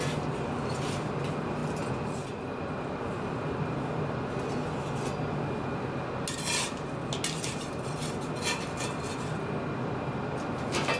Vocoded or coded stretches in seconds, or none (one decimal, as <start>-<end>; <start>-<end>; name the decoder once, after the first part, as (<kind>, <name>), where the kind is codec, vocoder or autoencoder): none